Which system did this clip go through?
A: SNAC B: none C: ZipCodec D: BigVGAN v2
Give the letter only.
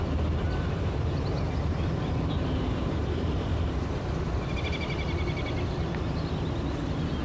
B